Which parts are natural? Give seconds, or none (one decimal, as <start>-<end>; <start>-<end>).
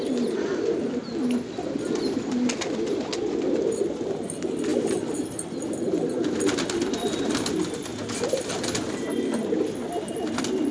0.0-10.7